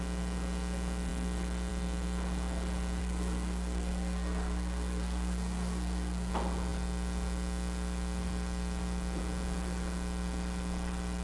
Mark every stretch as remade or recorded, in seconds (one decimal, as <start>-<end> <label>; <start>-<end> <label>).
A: 0.0-3.0 recorded; 3.0-6.3 remade; 6.3-11.2 recorded